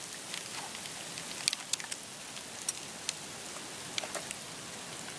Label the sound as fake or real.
real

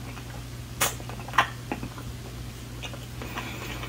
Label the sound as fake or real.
real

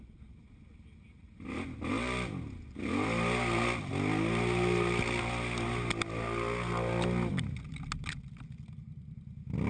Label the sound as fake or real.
real